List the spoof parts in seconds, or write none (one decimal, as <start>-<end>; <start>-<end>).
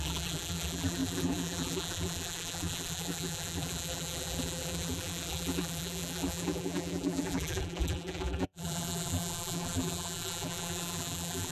0.0-11.5